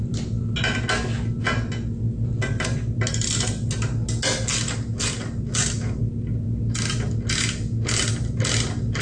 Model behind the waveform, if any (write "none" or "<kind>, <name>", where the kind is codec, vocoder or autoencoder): none